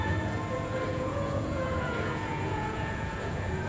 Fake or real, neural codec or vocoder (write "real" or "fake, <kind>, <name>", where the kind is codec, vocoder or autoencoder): fake, vocoder, Vocos